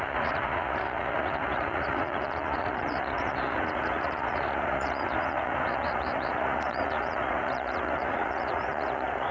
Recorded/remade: remade